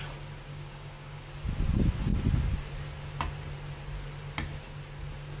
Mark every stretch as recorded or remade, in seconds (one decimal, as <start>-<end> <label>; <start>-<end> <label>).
0.0-0.5 recorded; 0.5-1.3 remade; 1.3-5.4 recorded